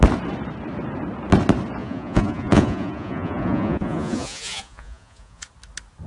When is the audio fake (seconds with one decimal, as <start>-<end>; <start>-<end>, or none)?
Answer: 1.8-5.5